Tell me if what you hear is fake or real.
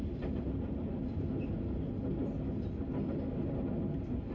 real